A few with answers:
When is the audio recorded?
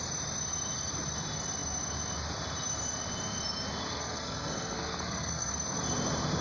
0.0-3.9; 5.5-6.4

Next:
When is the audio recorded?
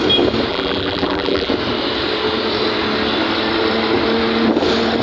0.0-0.5; 1.5-5.0